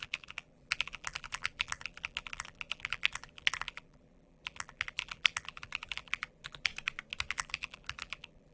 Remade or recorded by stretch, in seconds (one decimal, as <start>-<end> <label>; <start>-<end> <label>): 0.0-6.7 remade; 6.7-7.3 recorded; 7.3-8.5 remade